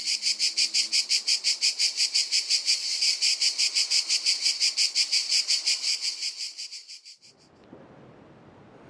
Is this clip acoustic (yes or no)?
no